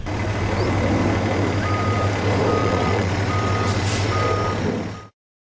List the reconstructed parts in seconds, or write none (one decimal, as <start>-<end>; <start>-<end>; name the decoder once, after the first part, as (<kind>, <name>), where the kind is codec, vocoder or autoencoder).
2.6-3.1 (vocoder, WaveNeXt)